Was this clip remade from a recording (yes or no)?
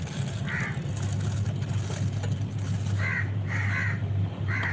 no